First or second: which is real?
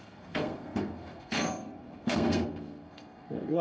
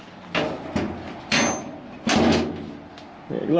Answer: second